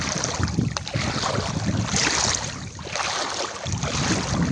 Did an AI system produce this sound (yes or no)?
no